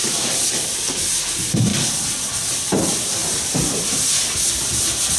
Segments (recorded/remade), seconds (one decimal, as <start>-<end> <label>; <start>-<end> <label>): 0.0-1.7 recorded; 1.7-2.5 remade; 2.5-3.2 recorded; 3.2-4.4 remade; 4.4-5.2 recorded